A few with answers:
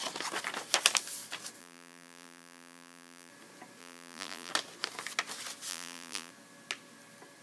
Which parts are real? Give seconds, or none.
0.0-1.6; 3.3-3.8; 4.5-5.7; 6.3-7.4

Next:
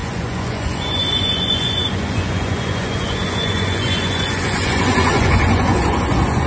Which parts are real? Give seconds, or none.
none

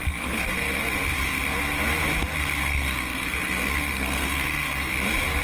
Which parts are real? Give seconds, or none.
0.8-2.6; 4.9-5.4

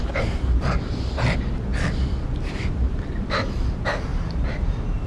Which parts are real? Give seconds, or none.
0.0-1.7; 3.6-5.1

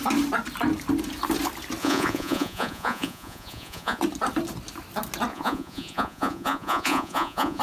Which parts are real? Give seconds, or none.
0.0-1.8; 4.0-5.3